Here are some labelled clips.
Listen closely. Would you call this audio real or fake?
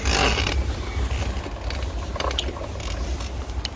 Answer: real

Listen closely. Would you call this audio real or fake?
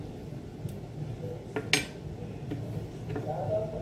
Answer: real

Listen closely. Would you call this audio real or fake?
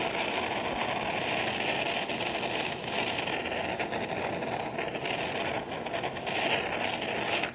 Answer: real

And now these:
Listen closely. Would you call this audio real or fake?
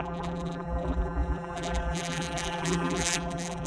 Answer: fake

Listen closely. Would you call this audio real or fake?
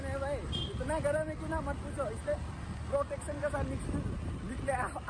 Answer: real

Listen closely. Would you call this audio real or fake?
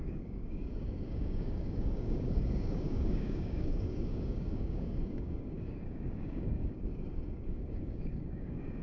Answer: fake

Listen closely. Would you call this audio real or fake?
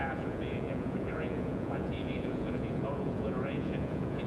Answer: fake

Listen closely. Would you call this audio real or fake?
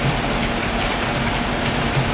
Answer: real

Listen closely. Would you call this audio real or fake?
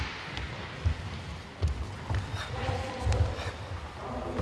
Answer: real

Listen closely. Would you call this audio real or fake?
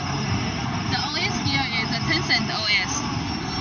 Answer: real